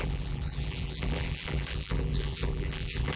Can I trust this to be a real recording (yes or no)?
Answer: no